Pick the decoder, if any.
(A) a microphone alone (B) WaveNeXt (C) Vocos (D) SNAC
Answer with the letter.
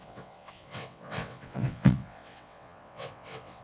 B